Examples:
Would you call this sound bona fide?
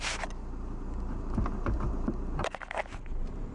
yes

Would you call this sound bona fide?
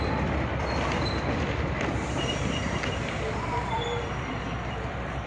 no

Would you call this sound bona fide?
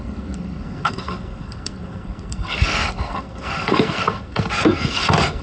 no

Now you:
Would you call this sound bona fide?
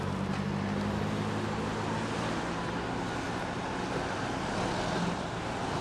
yes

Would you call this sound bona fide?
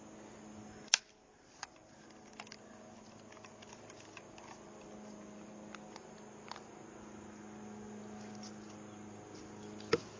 yes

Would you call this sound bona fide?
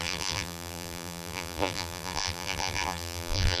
no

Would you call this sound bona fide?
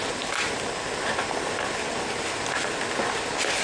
yes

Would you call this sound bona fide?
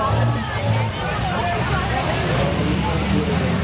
no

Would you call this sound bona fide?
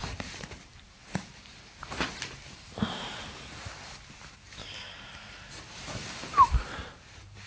no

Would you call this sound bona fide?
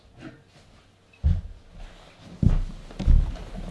yes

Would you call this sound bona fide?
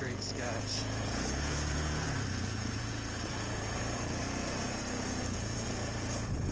no